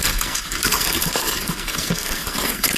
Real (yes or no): no